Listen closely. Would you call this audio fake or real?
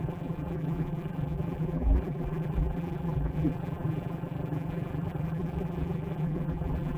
fake